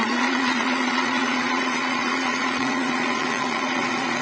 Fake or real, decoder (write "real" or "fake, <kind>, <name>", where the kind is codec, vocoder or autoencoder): fake, vocoder, Vocos